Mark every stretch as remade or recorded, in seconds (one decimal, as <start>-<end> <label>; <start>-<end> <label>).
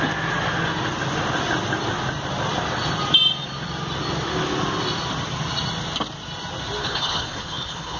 0.0-6.8 recorded; 6.8-8.0 remade